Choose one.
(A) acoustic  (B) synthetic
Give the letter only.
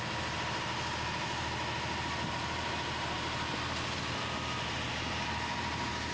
A